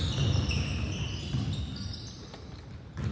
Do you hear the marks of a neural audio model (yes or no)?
no